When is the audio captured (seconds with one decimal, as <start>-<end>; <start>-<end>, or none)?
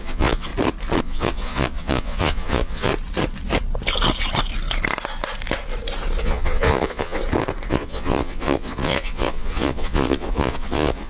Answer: 0.5-1.0; 2.9-6.2; 7.2-7.7